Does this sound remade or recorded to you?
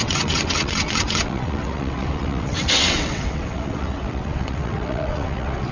remade